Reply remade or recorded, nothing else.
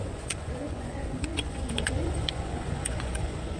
remade